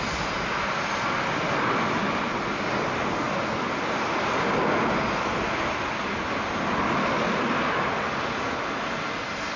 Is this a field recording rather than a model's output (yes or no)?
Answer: yes